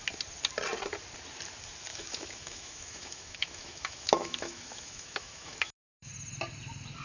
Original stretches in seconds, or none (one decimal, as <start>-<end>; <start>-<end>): 0.0-1.9; 6.1-7.0